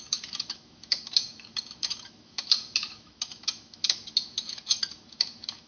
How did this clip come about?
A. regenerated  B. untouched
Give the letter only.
A